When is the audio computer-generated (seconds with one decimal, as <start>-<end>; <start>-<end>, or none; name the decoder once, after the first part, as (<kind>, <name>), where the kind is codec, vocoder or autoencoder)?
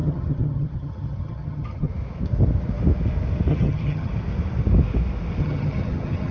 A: 0.0-1.9 (vocoder, HiFi-GAN); 3.5-4.1; 5.4-6.3